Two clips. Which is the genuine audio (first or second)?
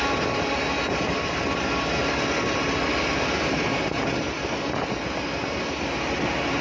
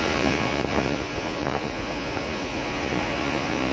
first